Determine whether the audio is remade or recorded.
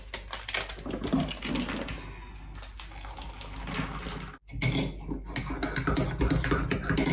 recorded